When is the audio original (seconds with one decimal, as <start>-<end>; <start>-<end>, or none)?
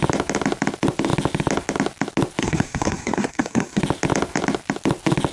0.0-2.4; 3.8-5.3